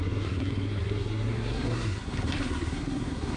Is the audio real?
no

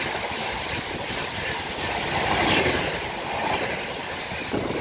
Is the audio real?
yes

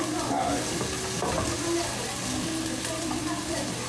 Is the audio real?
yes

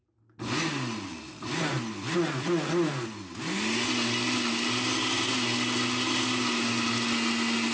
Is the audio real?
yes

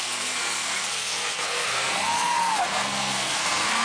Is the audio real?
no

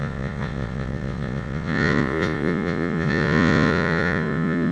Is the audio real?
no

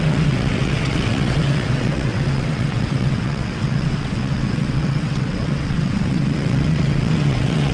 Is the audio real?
no